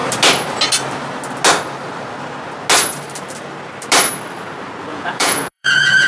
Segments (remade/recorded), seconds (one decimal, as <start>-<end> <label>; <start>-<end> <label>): 0.0-4.9 recorded; 4.9-6.1 remade